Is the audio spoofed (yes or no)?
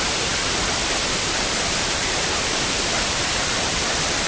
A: yes